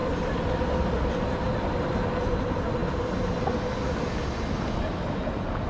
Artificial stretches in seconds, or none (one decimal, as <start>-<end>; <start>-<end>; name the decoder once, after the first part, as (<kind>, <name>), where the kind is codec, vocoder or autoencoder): none

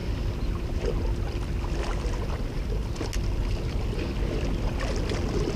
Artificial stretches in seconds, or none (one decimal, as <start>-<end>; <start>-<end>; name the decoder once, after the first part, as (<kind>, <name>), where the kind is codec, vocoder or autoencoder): none

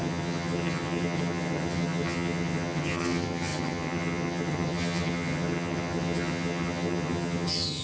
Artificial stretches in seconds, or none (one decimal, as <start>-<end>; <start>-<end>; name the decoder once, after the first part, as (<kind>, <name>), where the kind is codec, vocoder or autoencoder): 0.0-7.8 (vocoder, HiFi-GAN)

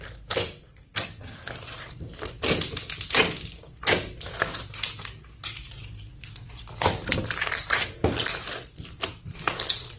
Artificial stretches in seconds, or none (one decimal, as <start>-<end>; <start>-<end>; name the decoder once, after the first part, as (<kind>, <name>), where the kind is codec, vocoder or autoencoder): none